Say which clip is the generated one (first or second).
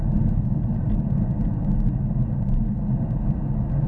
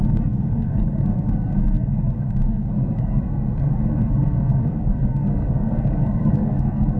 second